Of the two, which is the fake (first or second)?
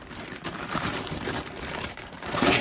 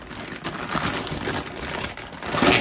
first